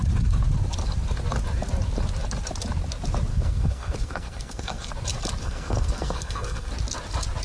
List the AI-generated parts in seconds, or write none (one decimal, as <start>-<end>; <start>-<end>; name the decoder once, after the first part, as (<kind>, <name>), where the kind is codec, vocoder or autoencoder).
3.3-4.9 (codec, SNAC); 5.4-6.7